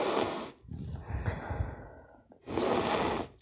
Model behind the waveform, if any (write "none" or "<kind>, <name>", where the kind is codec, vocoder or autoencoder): none